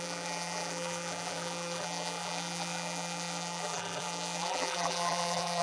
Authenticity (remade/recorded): remade